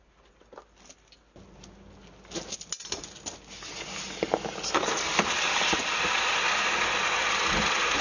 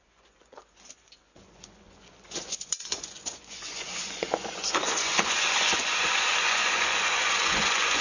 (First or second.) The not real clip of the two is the second